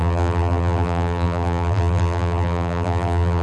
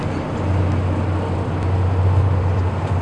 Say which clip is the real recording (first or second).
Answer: second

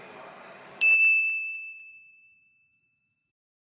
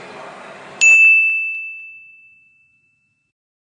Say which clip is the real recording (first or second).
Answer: second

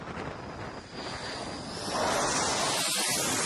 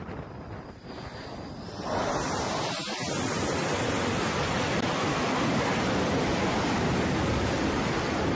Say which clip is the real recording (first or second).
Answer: first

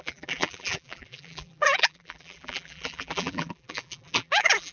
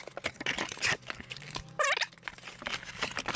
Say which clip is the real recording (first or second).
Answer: second